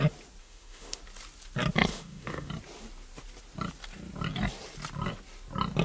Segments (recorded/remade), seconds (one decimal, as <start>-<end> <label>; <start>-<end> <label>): 0.0-0.4 recorded; 0.4-1.0 remade; 1.0-1.9 recorded; 1.9-2.5 remade; 2.5-5.8 recorded